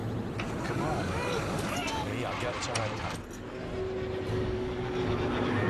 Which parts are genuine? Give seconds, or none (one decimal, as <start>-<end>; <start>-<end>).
0.0-0.7; 2.1-4.3